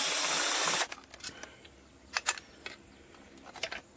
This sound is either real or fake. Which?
real